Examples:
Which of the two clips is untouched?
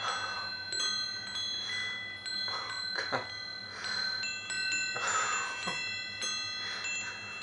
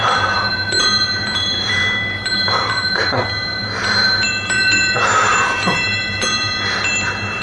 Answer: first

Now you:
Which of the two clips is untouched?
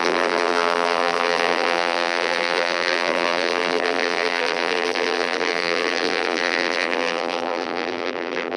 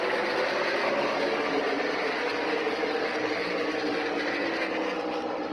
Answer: second